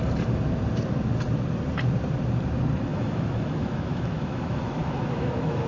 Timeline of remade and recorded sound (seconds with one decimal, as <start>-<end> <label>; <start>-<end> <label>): 0.0-2.9 recorded; 2.9-5.7 remade